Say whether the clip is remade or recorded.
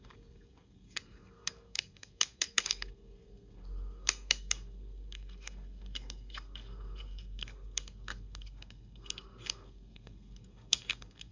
remade